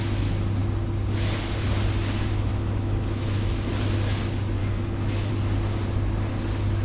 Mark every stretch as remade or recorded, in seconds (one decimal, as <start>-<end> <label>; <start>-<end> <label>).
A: 0.0-2.5 recorded; 2.5-3.5 remade; 3.5-4.6 recorded; 4.6-5.3 remade; 5.3-6.8 recorded